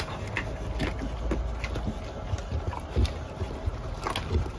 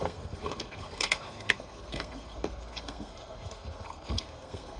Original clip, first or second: first